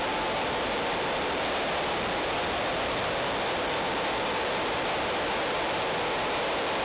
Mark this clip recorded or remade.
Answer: recorded